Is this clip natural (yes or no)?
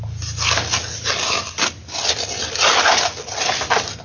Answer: yes